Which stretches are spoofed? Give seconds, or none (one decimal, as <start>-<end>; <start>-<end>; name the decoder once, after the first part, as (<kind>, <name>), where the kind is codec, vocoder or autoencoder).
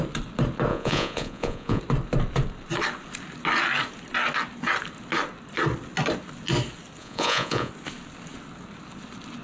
0.7-1.8 (vocoder, Vocos); 7.0-7.7